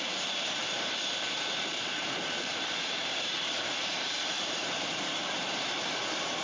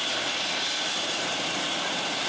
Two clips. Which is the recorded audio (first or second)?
second